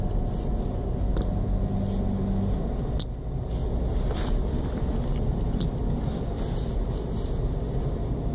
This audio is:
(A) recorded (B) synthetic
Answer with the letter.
A